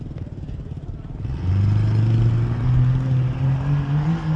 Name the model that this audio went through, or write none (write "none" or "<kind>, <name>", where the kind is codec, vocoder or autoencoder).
none